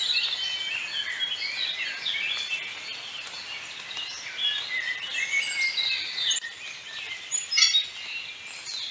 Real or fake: real